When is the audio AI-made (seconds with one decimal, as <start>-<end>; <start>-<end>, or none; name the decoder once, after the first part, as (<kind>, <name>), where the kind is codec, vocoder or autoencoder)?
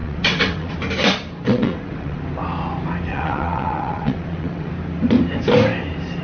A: 0.0-0.7 (vocoder, WaveNeXt); 1.4-2.2; 3.1-4.7